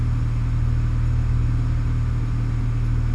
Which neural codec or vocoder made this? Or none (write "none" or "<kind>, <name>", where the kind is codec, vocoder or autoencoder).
none